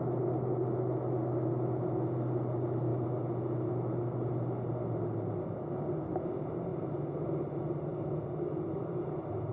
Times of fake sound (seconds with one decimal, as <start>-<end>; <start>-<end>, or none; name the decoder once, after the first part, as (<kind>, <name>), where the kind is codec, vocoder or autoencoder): none